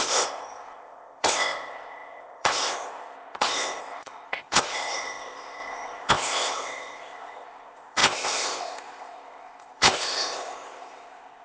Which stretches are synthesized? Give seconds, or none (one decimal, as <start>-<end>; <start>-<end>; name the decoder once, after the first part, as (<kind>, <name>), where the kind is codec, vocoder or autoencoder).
0.0-11.4 (codec, ZipCodec)